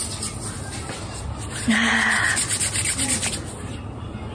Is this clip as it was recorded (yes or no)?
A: yes